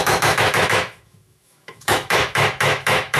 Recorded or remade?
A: remade